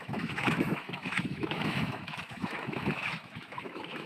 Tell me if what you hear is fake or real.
fake